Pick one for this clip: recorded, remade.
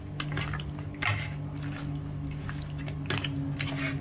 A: recorded